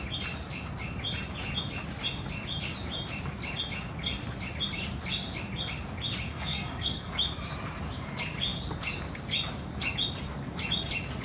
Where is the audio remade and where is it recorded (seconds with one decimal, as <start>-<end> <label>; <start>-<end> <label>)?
0.0-6.3 recorded; 6.3-7.1 remade; 7.1-11.2 recorded